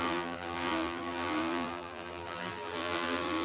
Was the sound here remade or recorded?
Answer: remade